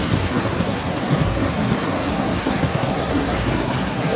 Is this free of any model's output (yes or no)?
no